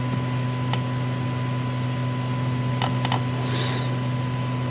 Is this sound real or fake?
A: real